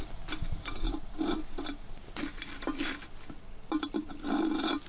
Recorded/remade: recorded